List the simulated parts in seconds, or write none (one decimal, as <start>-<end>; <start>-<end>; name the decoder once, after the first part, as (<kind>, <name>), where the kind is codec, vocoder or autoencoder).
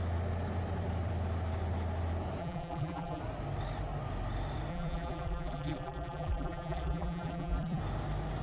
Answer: 2.4-3.2 (vocoder, BigVGAN v2); 4.7-7.8